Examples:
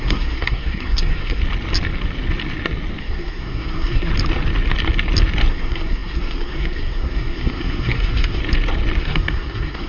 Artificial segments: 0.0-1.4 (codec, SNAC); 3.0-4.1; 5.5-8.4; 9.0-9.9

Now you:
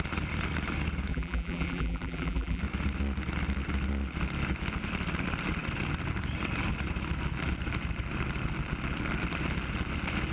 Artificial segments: 1.1-2.6 (vocoder, BigVGAN v2)

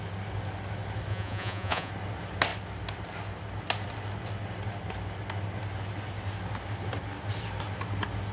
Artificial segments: 1.1-1.9 (vocoder, Vocos)